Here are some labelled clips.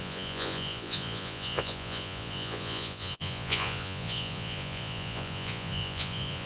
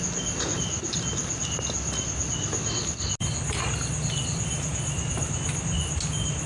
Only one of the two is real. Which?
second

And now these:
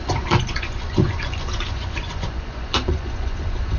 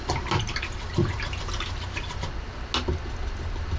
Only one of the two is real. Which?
second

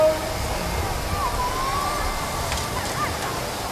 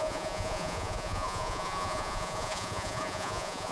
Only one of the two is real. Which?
first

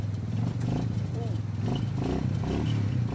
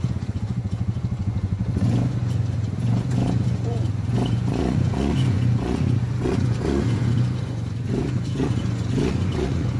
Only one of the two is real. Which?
first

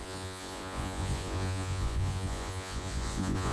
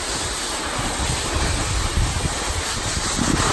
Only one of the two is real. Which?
second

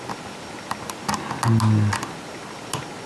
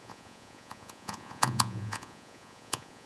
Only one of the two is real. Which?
first